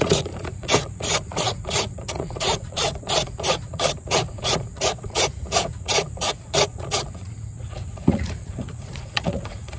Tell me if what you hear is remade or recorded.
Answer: remade